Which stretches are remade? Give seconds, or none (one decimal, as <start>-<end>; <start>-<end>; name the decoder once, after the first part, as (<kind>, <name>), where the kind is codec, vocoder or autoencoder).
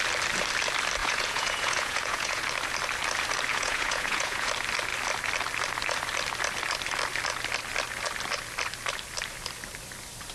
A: 1.0-2.4 (vocoder, Vocos); 3.5-4.5